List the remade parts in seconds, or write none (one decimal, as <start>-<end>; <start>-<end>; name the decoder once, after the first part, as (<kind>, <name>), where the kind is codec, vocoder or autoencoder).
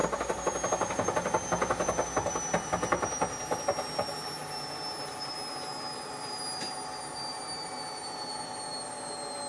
none